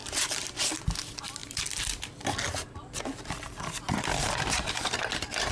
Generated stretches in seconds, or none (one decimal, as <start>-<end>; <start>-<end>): 0.0-0.8; 1.4-4.7